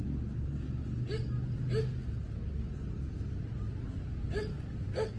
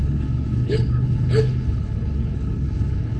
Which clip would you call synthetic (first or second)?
second